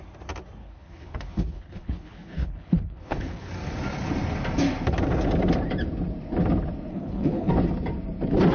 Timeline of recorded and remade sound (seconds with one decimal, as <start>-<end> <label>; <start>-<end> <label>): 0.0-0.6 recorded; 0.6-3.5 remade; 3.5-6.9 recorded; 6.9-7.5 remade; 7.5-8.5 recorded